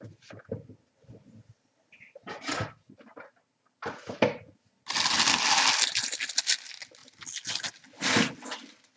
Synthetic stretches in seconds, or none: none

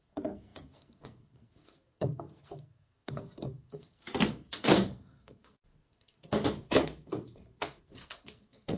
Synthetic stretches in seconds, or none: 0.0-8.8 (codec, SNAC)

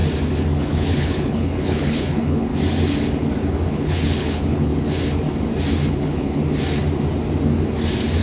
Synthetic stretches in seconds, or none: 0.6-2.5 (codec, HILCodec); 3.7-4.7; 5.9-6.4

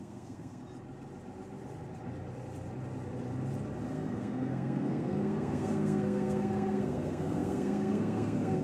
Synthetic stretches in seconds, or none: 0.0-0.6 (codec, SNAC); 3.9-8.6